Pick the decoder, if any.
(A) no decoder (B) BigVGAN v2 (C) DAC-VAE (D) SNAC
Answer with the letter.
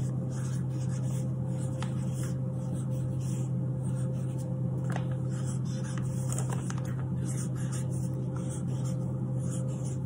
A